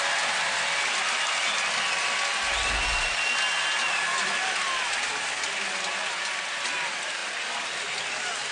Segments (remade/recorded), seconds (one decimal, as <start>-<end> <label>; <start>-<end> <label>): 0.0-8.5 recorded